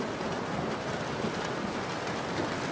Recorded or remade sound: recorded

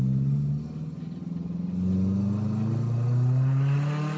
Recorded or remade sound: recorded